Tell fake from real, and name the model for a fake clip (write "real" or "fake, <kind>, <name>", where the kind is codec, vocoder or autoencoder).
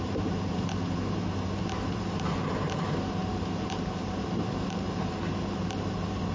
fake, vocoder, BigVGAN v2